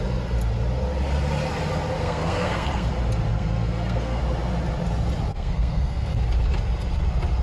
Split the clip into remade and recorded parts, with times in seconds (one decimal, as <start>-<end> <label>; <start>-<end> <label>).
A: 0.0-2.0 recorded; 2.0-2.9 remade; 2.9-3.3 recorded; 3.3-4.2 remade; 4.2-5.3 recorded; 5.3-6.2 remade; 6.2-7.4 recorded